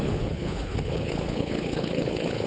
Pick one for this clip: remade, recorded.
remade